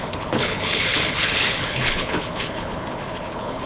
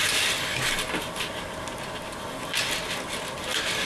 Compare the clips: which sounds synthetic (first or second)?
first